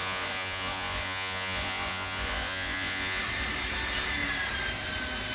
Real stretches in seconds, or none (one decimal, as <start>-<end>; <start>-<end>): 3.2-5.3